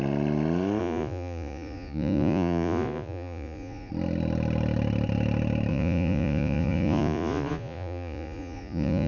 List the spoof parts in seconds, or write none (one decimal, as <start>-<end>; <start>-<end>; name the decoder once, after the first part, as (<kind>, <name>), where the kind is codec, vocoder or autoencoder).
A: 0.8-3.9 (vocoder, Vocos); 5.7-9.1